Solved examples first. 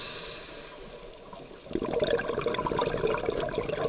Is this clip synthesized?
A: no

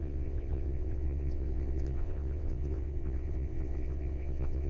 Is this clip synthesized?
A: yes